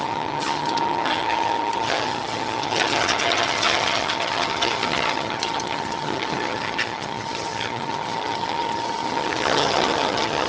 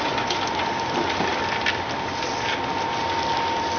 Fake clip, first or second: first